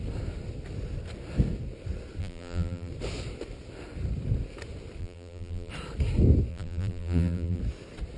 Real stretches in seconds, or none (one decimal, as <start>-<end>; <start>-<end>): 0.0-2.2; 2.9-5.0; 5.7-6.5; 7.6-8.2